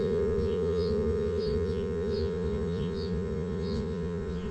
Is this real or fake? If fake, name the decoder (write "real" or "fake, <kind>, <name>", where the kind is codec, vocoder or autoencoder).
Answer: fake, vocoder, Vocos